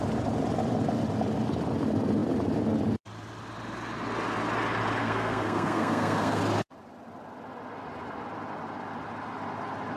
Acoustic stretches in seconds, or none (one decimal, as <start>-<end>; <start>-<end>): 0.0-5.0; 6.4-10.0